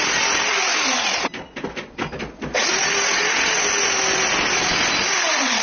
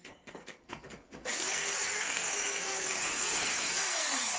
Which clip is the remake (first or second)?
second